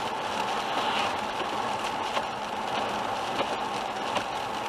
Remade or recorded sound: recorded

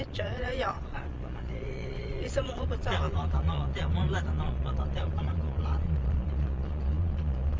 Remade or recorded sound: remade